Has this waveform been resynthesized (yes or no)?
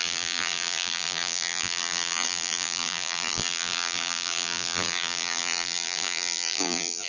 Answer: yes